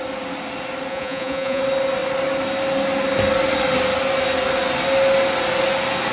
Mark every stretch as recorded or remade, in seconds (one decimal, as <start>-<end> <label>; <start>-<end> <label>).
0.0-0.9 recorded; 0.9-1.6 remade; 1.6-6.1 recorded